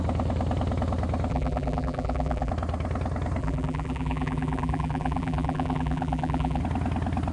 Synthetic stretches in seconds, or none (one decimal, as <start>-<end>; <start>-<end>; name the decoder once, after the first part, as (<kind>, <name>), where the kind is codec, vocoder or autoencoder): 1.3-2.5 (vocoder, BigVGAN v2); 3.4-6.6